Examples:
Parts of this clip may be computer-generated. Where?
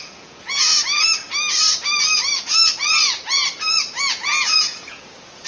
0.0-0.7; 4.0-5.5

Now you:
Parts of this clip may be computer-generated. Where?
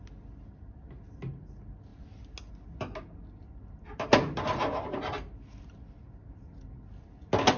none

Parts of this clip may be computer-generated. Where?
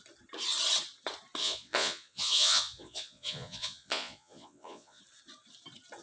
1.4-5.0